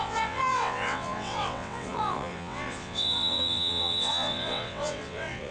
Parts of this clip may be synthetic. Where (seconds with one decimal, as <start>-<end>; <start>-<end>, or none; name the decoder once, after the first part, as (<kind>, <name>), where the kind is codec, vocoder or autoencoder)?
0.0-5.5 (vocoder, WaveNeXt)